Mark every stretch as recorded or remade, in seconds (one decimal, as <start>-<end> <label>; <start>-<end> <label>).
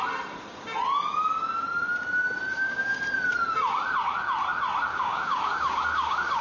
0.0-2.5 recorded; 2.5-3.0 remade; 3.0-4.9 recorded; 4.9-6.4 remade